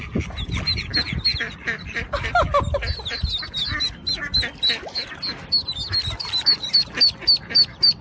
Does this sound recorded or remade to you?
recorded